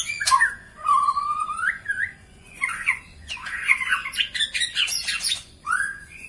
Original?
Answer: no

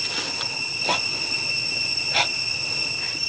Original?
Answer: yes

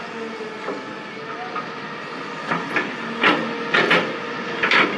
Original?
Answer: yes